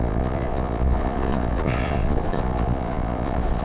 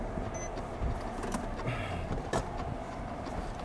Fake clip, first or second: first